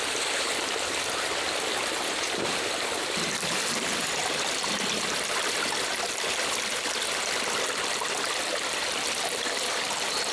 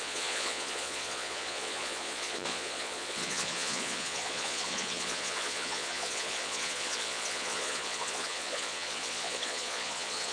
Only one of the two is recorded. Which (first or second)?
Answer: first